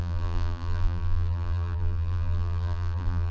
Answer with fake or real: fake